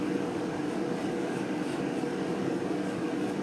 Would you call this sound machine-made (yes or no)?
yes